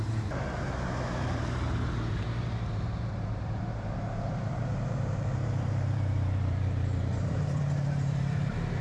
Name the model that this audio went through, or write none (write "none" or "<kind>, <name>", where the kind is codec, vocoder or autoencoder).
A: vocoder, BigVGAN v2